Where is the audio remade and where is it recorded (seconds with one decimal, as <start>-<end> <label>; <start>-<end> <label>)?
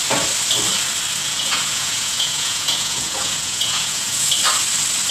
0.0-1.2 recorded; 1.2-4.3 remade; 4.3-5.1 recorded